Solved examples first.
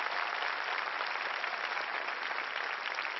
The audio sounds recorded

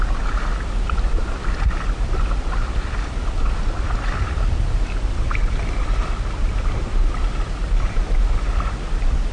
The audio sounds remade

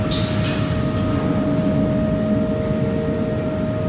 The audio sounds recorded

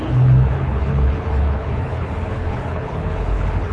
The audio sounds remade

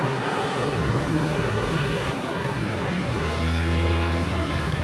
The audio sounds remade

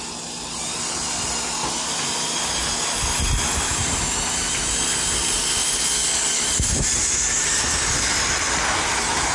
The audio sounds recorded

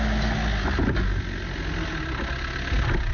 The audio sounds recorded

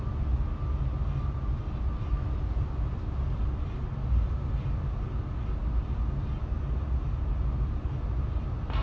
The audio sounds recorded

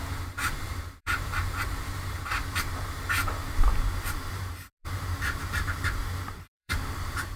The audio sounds remade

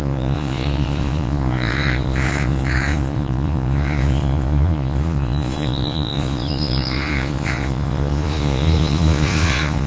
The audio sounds remade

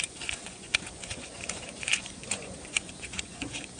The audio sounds remade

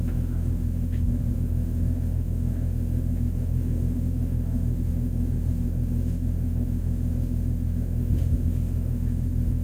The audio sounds remade